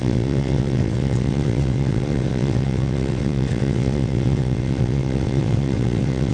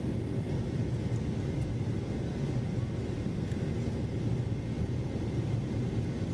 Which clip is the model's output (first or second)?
first